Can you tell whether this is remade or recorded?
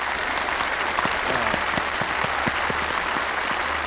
recorded